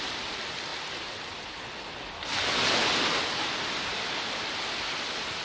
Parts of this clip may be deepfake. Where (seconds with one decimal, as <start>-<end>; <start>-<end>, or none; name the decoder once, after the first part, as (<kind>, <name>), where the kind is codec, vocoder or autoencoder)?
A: none